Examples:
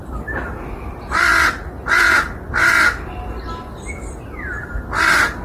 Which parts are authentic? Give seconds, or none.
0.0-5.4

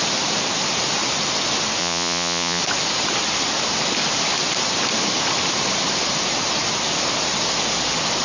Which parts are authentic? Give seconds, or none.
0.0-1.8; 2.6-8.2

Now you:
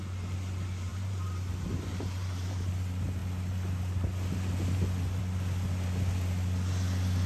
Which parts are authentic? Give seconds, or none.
0.0-0.9; 2.6-7.3

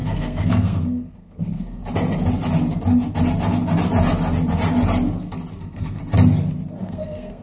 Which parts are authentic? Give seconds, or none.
1.8-5.6; 6.0-6.8